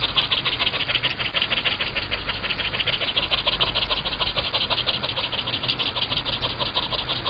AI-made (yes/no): no